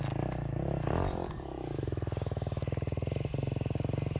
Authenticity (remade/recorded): recorded